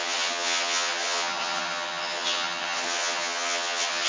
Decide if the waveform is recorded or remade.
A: remade